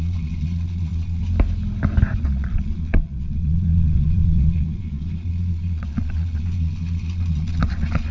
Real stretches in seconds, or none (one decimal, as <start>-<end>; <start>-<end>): 1.2-2.2